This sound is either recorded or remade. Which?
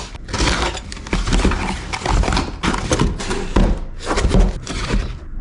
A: recorded